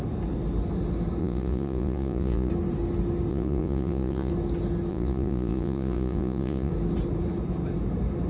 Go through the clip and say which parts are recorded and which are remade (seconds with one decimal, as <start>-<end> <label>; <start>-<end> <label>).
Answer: 0.0-1.2 recorded; 1.2-2.5 remade; 2.5-3.3 recorded; 3.3-4.3 remade; 4.3-4.9 recorded; 4.9-6.7 remade; 6.7-8.3 recorded